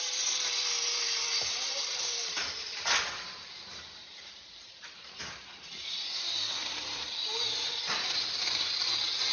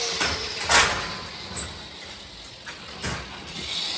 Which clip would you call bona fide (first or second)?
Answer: second